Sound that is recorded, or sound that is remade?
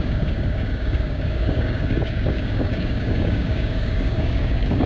remade